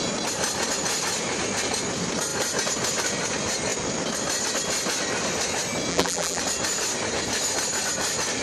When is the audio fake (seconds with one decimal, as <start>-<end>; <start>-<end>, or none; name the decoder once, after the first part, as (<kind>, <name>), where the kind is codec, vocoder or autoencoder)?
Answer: 5.9-6.4 (vocoder, BigVGAN v2)